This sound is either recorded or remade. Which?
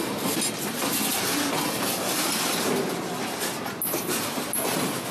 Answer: recorded